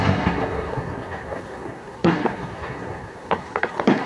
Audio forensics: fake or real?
fake